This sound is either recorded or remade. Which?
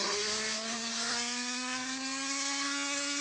remade